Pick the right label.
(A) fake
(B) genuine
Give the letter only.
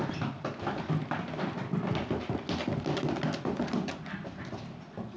B